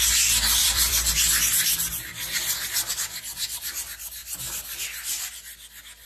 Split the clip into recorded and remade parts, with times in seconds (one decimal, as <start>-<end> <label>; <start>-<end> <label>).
0.0-0.6 recorded; 0.6-1.1 remade; 1.1-6.1 recorded